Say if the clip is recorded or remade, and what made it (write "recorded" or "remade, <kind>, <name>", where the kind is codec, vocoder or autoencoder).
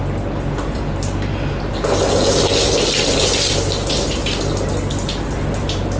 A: recorded